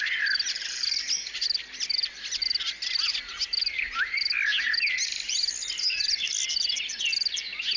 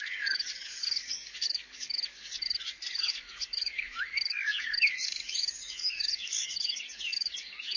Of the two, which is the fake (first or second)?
second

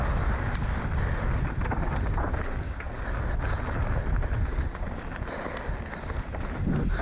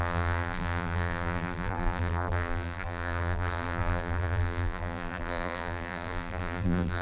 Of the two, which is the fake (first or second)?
second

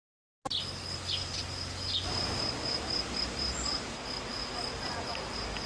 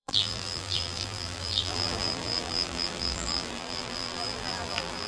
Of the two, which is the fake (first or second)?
second